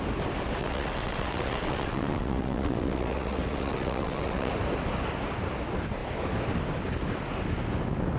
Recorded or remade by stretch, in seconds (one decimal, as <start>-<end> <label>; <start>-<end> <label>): 0.0-0.6 recorded; 0.6-4.5 remade; 4.5-8.2 recorded